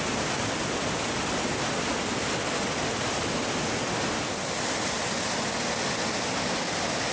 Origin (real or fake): real